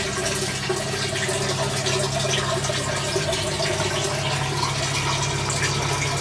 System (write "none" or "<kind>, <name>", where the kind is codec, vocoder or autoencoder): none